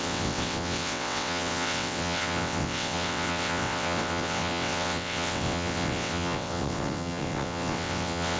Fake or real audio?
fake